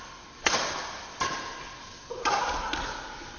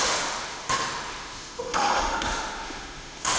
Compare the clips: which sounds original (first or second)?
first